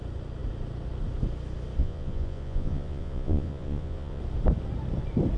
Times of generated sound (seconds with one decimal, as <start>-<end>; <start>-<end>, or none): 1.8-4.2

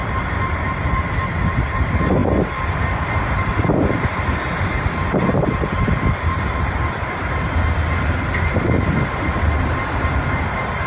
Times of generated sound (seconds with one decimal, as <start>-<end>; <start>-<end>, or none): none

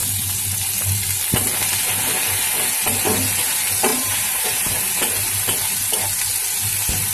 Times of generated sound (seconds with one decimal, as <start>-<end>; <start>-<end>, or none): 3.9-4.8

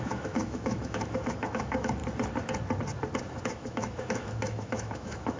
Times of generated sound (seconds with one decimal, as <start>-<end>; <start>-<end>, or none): 0.0-2.0; 3.4-5.4

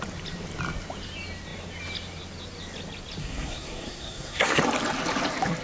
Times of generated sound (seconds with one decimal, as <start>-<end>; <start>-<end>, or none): 3.2-4.6

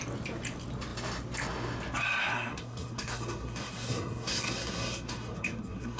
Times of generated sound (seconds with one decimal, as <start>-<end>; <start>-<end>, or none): 2.2-6.0

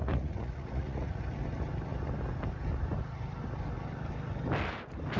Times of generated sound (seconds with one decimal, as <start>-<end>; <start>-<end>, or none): 0.0-1.2

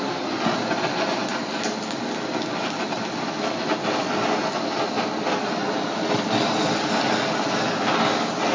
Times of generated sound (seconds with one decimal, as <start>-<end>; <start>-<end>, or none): none